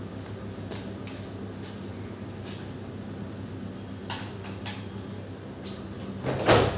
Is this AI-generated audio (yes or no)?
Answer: no